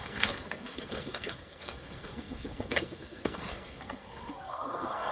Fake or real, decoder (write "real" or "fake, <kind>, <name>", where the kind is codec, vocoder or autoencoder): fake, codec, SNAC